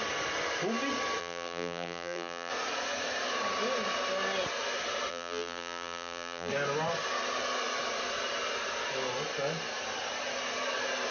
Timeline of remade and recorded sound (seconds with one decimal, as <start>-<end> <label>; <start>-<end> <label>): 0.0-1.2 recorded; 1.2-2.5 remade; 2.5-5.1 recorded; 5.1-6.5 remade; 6.5-11.1 recorded